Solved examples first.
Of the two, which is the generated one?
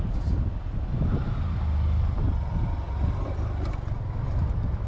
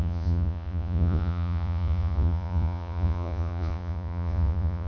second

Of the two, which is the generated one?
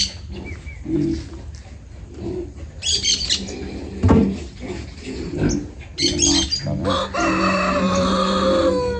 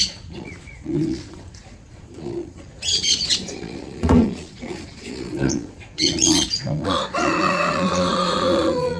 second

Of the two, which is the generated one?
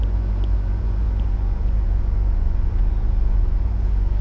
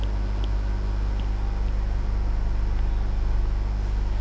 first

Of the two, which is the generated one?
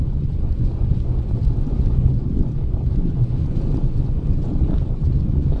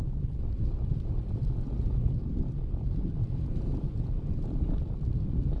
first